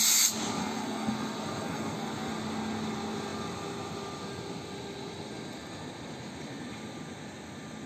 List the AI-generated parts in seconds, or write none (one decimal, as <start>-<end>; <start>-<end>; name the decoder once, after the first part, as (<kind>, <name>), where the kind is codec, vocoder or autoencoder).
0.6-2.3 (codec, SNAC)